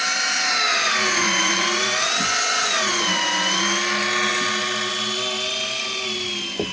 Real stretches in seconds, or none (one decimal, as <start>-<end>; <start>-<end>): 0.0-0.7; 3.6-6.7

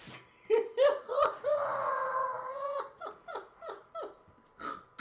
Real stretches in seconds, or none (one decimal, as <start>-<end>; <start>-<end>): 0.0-0.9; 3.9-5.0

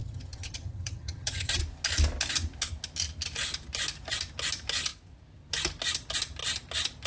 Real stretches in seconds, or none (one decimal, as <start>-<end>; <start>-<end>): 1.6-7.1

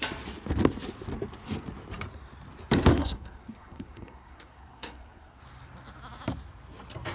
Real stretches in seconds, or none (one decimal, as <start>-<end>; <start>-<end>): 0.0-2.9; 5.4-7.1

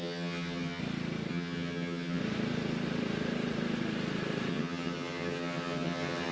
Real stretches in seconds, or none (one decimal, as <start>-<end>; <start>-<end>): 0.8-1.3; 2.2-4.5

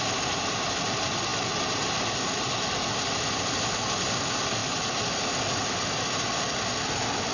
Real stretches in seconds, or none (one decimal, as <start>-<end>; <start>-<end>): 0.0-7.3

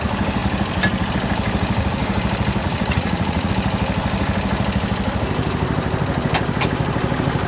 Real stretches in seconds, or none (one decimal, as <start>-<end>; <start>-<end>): 0.0-2.6; 3.5-7.5